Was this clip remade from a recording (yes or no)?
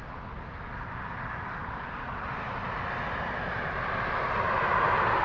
no